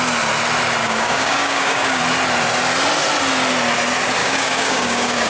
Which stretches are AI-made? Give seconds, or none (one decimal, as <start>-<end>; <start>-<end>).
0.8-2.0; 4.2-5.3